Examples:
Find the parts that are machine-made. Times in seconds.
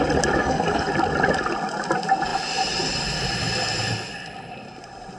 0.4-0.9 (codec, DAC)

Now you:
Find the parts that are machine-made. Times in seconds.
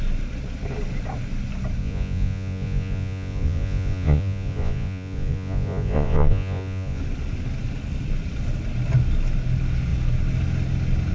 1.8-7.0 (vocoder, Vocos)